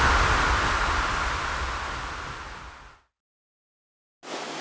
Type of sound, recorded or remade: recorded